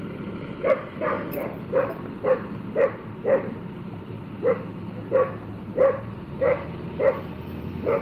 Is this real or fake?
fake